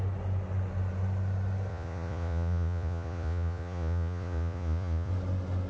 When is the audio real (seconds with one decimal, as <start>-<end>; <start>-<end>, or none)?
0.0-1.7; 5.1-5.7